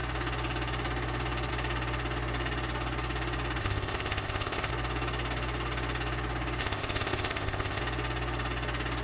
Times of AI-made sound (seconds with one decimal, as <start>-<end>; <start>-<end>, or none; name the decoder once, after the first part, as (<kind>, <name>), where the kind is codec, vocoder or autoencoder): 3.6-4.7 (codec, ZipCodec); 6.6-7.8